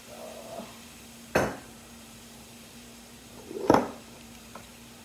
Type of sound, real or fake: fake